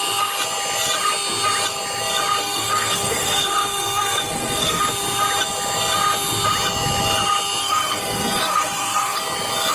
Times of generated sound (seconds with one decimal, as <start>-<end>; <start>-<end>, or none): 2.4-4.8; 7.6-9.2